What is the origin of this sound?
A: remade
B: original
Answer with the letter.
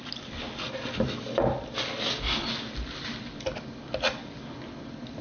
B